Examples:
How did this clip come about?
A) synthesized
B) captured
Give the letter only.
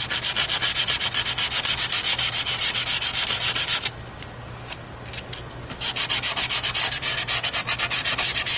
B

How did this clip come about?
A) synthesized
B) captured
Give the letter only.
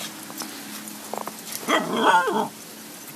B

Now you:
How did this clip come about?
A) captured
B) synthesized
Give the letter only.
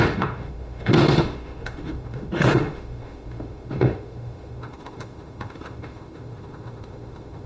B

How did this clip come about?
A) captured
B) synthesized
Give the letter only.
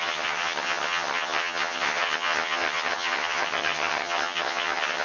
B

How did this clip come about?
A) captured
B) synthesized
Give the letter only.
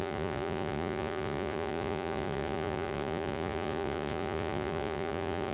B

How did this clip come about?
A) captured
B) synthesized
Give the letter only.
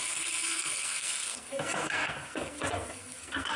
B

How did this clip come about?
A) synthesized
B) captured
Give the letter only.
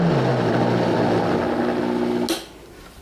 B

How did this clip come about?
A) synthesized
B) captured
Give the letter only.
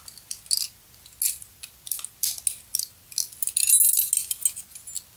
B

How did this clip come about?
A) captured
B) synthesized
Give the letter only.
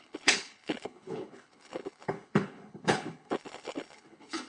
B